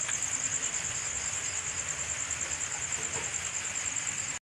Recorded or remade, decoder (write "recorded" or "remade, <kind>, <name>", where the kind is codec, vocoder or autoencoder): recorded